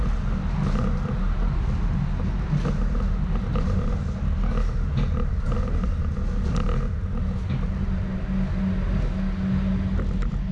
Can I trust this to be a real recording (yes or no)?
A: yes